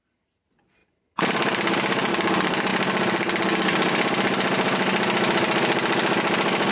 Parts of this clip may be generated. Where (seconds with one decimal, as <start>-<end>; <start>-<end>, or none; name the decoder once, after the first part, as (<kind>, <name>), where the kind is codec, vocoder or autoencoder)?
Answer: 0.8-2.1 (vocoder, BigVGAN v2)